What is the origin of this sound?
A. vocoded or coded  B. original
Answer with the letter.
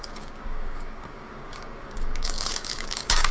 A